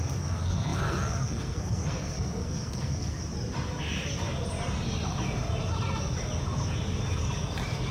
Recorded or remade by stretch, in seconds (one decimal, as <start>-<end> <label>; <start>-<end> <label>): 0.0-3.2 remade; 3.2-7.9 recorded